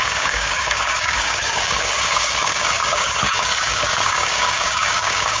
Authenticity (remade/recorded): remade